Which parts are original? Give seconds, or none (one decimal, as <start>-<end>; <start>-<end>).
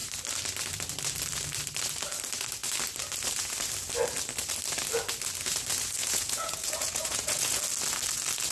0.0-6.0; 7.6-8.5